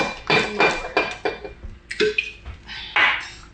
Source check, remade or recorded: recorded